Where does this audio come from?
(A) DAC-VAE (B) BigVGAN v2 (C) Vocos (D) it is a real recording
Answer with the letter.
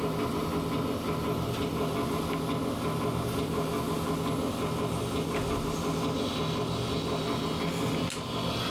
D